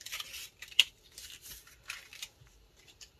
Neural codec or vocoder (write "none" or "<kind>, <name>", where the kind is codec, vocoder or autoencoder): vocoder, BigVGAN v2